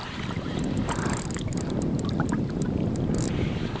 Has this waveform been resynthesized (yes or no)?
no